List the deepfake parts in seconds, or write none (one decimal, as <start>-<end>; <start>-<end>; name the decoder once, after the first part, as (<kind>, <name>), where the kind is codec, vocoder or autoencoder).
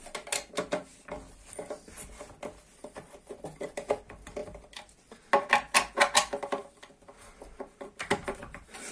none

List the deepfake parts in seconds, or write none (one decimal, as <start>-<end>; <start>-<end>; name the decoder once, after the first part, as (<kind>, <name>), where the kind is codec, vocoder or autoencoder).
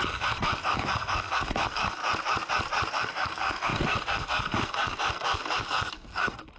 0.0-2.0 (codec, SNAC); 2.9-6.6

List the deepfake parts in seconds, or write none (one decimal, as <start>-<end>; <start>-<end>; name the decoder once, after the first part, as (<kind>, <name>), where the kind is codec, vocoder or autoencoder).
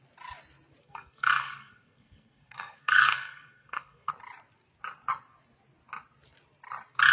0.8-4.1 (codec, SNAC)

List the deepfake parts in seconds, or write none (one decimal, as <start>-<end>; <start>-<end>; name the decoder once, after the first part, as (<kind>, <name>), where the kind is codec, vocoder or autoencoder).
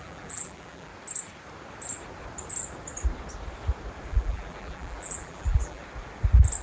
0.0-0.9 (vocoder, BigVGAN v2); 4.1-5.8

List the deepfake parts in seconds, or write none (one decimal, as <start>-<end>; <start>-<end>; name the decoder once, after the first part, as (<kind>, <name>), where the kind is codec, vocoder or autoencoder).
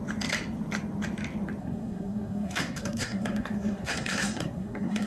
1.6-5.1 (codec, SNAC)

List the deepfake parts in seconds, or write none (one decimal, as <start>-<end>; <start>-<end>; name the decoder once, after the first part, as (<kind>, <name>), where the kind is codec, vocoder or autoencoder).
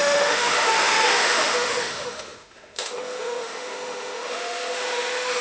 0.0-5.4 (autoencoder, DAC-VAE)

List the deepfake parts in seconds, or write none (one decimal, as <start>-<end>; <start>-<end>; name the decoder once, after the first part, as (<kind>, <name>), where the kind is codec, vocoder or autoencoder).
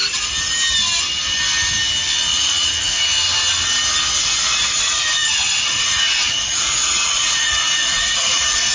2.3-3.0 (vocoder, Vocos); 5.2-8.7